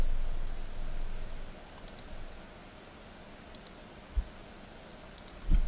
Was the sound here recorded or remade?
recorded